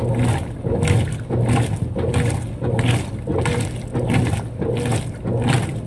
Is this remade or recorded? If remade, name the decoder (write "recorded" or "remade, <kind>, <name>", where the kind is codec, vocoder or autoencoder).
recorded